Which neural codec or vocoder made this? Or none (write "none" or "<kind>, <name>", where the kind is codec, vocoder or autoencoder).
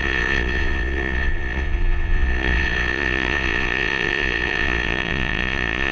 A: vocoder, Vocos